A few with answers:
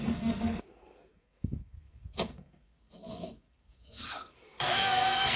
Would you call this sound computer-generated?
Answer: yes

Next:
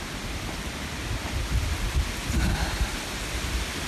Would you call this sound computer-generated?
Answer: no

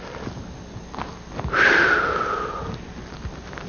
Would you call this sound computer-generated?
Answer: no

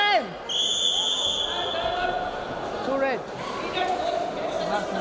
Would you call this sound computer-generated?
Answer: no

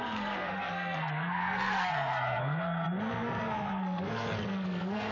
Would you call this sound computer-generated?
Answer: yes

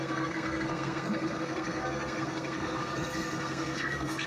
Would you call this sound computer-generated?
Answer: yes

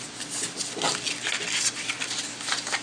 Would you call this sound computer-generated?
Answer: no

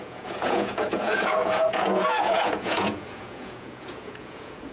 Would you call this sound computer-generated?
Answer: yes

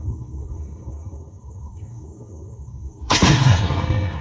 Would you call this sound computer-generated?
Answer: yes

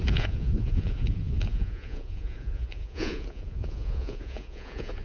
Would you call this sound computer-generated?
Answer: yes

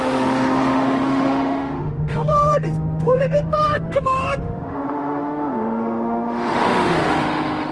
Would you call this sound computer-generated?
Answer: yes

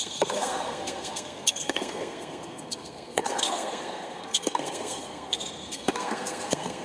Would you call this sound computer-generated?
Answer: yes